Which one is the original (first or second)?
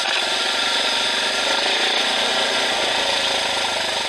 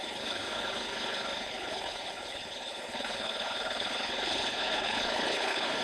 first